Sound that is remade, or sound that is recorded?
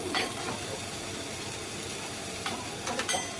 remade